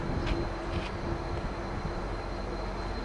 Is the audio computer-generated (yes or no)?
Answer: no